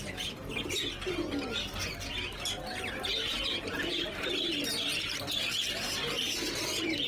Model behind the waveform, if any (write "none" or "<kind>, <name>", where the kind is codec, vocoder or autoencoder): none